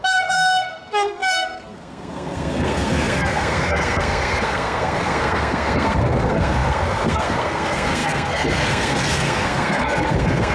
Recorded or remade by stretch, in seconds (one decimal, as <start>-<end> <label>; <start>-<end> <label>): 0.0-10.5 remade